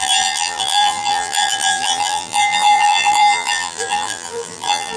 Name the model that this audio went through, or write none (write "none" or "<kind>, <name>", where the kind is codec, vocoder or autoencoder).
vocoder, BigVGAN v2